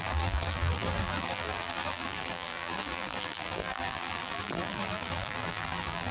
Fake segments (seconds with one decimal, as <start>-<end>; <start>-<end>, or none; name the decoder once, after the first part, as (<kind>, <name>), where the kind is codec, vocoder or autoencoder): 0.0-6.1 (vocoder, BigVGAN v2)